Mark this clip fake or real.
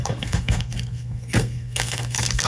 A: fake